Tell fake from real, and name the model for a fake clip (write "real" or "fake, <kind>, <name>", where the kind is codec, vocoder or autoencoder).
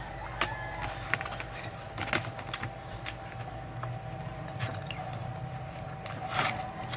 real